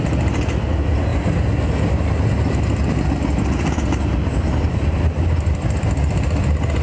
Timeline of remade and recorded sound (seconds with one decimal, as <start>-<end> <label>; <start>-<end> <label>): 0.0-6.8 recorded